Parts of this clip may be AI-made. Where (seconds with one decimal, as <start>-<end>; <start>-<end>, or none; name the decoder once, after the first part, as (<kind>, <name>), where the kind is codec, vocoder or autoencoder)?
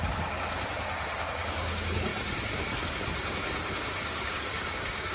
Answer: 0.0-5.1 (codec, DAC)